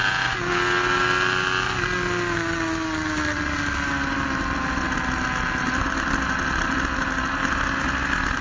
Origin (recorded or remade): recorded